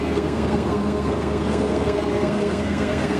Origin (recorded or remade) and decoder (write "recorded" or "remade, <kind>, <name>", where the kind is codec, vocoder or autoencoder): remade, codec, SNAC